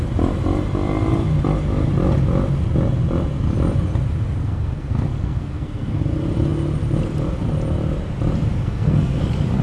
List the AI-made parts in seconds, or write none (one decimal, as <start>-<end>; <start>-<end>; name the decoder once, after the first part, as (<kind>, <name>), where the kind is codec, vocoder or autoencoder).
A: 4.4-6.0 (codec, SNAC); 8.6-9.2